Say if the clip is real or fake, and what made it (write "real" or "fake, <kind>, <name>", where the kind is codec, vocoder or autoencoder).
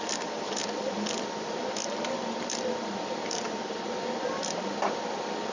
real